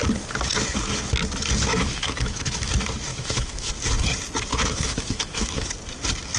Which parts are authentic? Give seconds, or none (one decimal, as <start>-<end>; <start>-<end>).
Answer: 0.0-1.7; 2.7-3.1; 3.7-4.5; 5.7-6.4